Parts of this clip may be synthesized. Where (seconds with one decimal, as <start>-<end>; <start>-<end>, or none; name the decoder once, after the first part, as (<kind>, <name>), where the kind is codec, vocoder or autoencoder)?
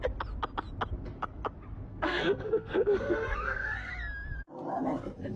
1.9-3.9 (codec, SNAC)